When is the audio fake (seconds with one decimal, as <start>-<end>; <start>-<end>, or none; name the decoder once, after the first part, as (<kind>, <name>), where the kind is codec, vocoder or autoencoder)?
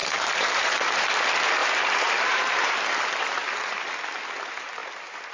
0.0-1.0 (vocoder, BigVGAN v2); 1.6-2.7